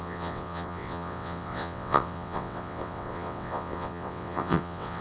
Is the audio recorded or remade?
remade